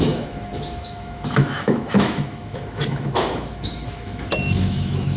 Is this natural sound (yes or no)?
no